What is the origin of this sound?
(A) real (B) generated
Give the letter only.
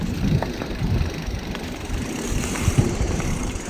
B